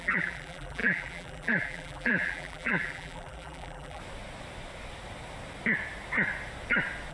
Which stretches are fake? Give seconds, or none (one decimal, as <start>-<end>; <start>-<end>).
0.0-4.0